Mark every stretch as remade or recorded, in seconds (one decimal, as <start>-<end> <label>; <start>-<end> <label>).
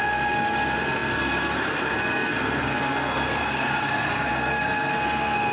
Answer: 0.0-5.5 remade